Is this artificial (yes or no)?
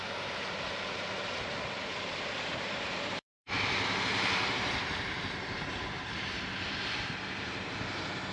yes